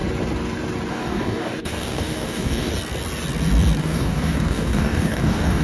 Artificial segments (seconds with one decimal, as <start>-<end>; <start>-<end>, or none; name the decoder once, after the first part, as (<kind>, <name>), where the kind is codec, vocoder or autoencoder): 0.9-2.7 (codec, DAC); 3.8-5.6